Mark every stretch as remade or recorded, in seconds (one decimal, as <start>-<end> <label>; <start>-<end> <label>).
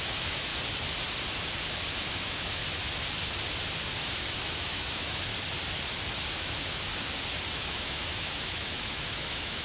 0.0-0.5 remade; 0.5-2.1 recorded; 2.1-2.6 remade; 2.6-4.4 recorded; 4.4-5.3 remade; 5.3-6.3 recorded; 6.3-6.9 remade; 6.9-7.5 recorded; 7.5-9.6 remade